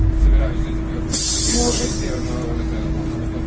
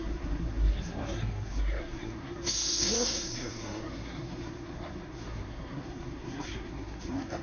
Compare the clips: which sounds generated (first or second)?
second